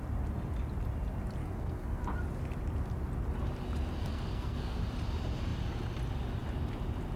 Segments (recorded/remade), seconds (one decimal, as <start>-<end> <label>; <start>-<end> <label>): 0.0-1.4 recorded; 1.4-2.0 remade; 2.0-4.0 recorded; 4.0-4.8 remade; 4.8-7.2 recorded